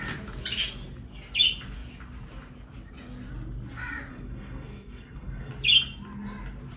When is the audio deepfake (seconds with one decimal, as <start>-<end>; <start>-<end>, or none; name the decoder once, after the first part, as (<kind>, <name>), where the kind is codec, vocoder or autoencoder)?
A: 4.1-5.5 (codec, SNAC)